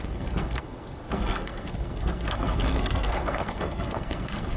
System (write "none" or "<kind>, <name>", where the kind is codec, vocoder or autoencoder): codec, SNAC